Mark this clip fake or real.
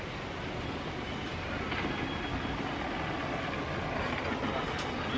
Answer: real